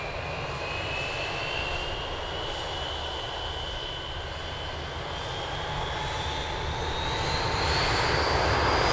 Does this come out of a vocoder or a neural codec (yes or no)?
no